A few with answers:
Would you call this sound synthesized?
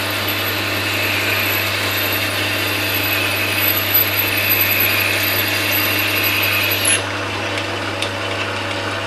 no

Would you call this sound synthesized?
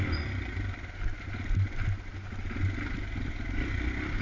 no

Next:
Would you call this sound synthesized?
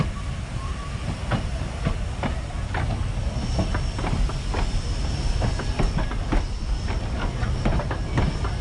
no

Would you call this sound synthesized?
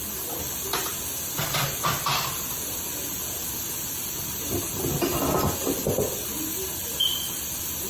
no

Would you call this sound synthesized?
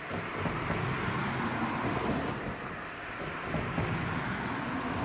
no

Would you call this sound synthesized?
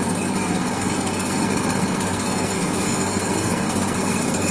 yes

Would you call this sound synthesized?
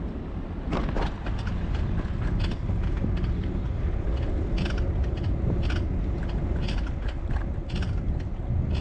no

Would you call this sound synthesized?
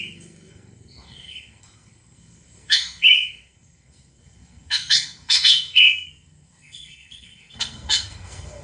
yes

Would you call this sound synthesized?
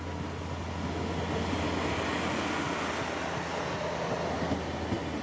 no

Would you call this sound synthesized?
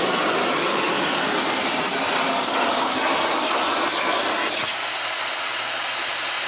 no